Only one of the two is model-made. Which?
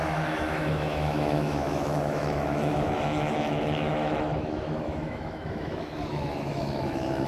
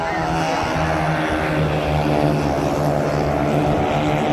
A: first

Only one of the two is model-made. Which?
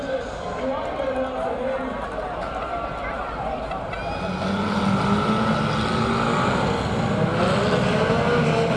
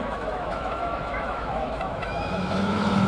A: second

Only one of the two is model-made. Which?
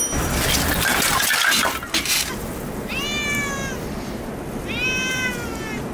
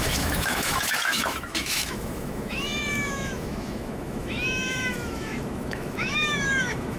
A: second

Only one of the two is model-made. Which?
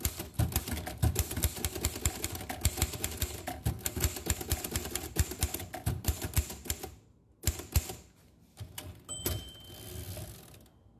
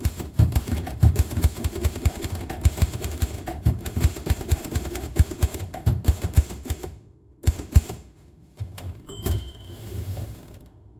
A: second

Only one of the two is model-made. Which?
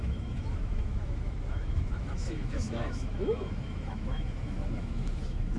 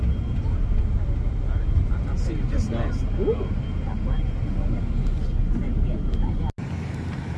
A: first